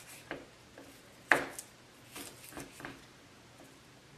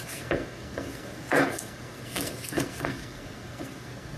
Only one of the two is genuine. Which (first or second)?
first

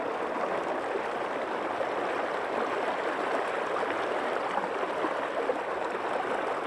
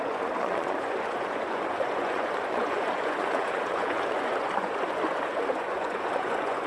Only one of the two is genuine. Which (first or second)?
first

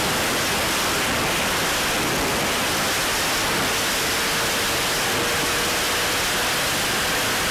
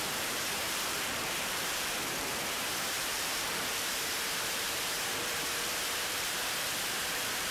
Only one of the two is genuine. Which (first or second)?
first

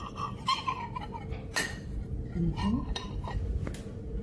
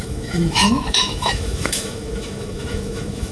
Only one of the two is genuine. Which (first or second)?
first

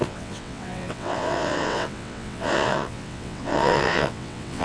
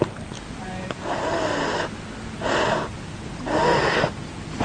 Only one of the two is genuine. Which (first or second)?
second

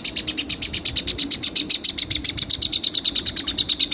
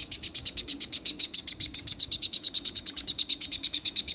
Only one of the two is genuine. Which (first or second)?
first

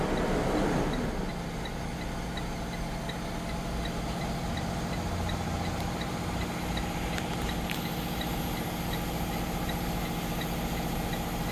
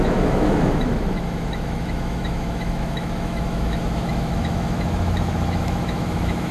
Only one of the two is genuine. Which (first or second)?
first